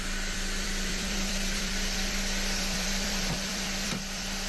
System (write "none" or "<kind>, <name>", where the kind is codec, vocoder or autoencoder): vocoder, BigVGAN v2